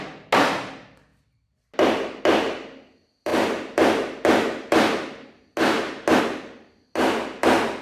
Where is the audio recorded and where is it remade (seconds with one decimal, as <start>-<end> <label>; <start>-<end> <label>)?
0.0-7.8 recorded